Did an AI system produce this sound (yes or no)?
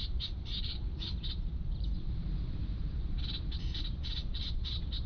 yes